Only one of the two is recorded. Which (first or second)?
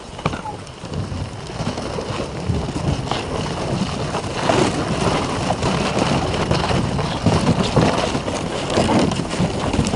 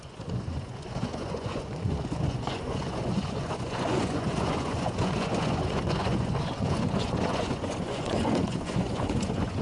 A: first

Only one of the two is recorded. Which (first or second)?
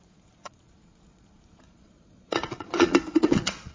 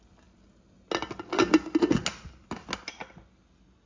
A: second